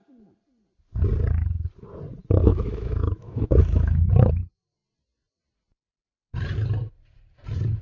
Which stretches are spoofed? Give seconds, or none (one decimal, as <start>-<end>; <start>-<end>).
2.5-4.1